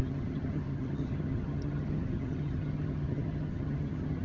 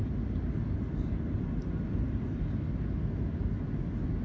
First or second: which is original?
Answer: second